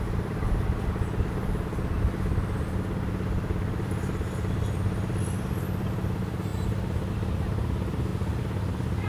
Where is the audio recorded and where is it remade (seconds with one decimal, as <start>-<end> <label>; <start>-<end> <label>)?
0.0-9.1 recorded